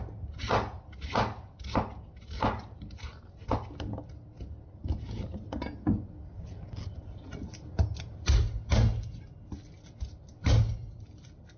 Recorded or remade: recorded